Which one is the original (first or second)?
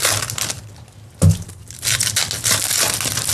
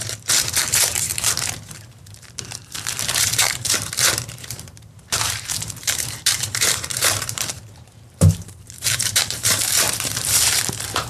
first